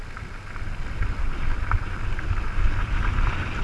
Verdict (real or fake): real